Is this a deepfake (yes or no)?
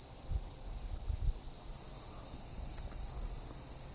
no